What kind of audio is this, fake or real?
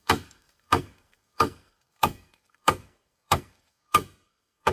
fake